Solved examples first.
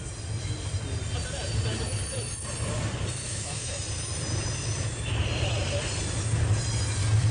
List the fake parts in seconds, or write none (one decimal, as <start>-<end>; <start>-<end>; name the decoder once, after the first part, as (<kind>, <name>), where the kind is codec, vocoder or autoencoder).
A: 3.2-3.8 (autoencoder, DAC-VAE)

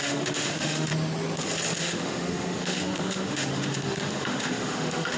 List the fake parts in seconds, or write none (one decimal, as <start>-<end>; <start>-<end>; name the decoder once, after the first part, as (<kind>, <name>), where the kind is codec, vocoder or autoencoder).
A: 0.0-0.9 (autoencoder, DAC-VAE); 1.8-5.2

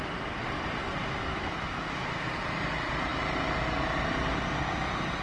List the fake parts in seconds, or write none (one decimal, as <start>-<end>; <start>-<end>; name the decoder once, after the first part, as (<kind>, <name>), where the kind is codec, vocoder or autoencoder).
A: 1.0-2.3 (autoencoder, DAC-VAE)

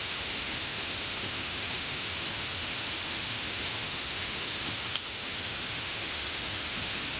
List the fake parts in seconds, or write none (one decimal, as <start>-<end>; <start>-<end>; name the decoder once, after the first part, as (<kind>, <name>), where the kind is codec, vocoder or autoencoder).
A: 0.0-7.2 (autoencoder, DAC-VAE)

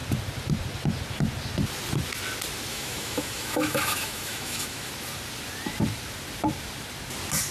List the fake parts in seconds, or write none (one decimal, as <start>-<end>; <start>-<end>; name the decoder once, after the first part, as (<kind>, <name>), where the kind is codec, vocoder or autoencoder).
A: 2.7-4.9 (autoencoder, DAC-VAE)